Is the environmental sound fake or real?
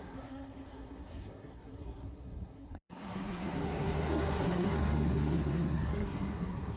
fake